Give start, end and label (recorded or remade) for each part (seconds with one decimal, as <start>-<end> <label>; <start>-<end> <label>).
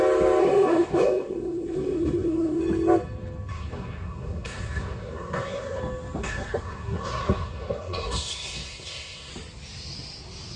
0.0-0.4 recorded; 0.4-2.6 remade; 2.6-3.5 recorded; 3.5-5.8 remade; 5.8-6.2 recorded; 6.2-9.3 remade; 9.3-10.6 recorded